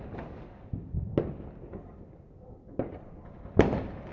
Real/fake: real